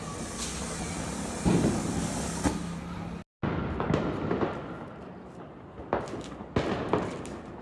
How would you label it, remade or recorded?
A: recorded